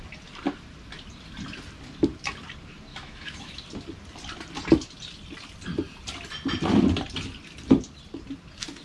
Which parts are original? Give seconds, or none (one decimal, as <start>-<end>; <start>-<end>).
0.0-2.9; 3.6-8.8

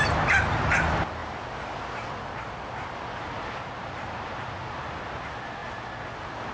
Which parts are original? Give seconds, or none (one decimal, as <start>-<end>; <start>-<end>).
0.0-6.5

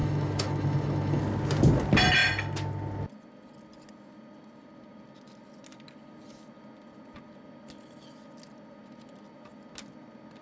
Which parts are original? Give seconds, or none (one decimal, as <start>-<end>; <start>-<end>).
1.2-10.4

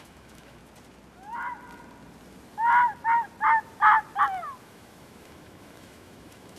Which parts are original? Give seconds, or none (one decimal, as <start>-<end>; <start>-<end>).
0.6-4.6

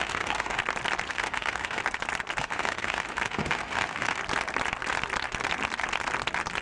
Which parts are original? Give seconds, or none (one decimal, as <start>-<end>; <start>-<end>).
0.6-1.1; 1.8-2.4; 4.2-6.6

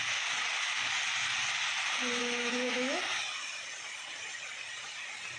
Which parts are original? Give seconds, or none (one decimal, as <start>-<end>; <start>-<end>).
0.0-2.2; 3.0-5.4

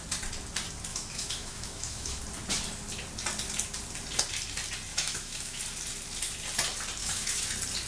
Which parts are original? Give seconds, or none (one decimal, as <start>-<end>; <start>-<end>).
0.0-0.9; 2.2-4.9; 5.6-7.0; 7.5-7.9

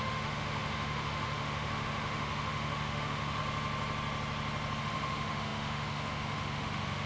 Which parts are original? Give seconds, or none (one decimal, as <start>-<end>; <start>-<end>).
3.4-4.8